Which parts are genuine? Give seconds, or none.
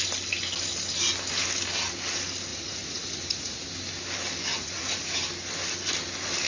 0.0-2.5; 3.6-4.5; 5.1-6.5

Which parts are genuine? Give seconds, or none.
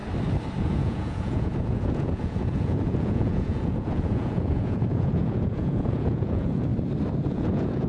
0.0-0.6; 6.7-7.3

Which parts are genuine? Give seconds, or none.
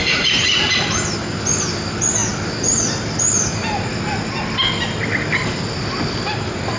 0.9-6.8